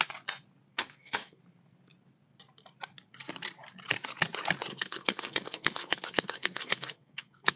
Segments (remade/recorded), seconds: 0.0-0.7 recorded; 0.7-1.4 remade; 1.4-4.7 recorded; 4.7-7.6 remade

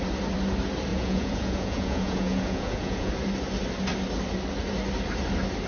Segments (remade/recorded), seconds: 0.0-0.9 recorded; 0.9-3.1 remade; 3.1-5.7 recorded

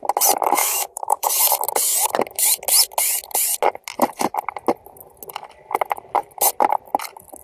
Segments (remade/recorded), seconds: 0.0-0.6 recorded; 0.6-1.3 remade; 1.3-7.4 recorded